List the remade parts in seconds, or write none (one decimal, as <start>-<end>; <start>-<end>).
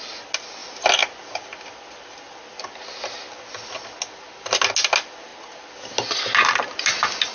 none